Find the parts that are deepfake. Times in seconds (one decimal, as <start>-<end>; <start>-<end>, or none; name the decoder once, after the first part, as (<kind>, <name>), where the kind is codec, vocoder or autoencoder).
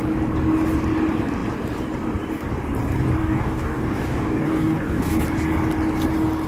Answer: 3.2-5.2 (codec, DAC)